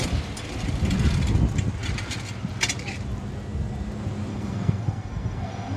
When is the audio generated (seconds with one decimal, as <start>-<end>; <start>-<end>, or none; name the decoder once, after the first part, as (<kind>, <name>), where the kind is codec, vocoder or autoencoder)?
4.3-5.8 (codec, SNAC)